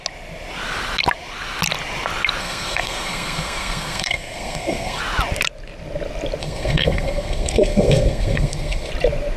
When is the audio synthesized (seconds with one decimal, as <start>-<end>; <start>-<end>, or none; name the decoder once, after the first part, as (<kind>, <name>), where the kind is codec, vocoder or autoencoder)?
2.4-5.0 (codec, SNAC); 6.4-8.9